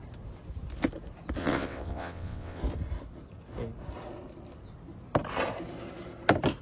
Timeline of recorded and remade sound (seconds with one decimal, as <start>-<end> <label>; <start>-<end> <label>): 0.0-1.4 recorded; 1.4-2.6 remade; 2.6-6.6 recorded